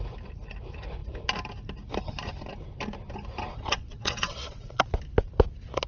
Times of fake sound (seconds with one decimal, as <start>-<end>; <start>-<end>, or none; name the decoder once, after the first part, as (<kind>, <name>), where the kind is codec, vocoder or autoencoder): 3.5-4.9 (vocoder, WaveNeXt)